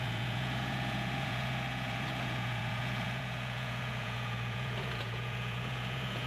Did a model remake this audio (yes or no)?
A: yes